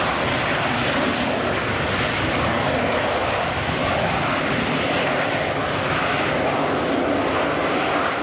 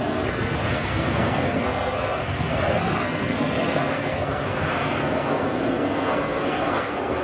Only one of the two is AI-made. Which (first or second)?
second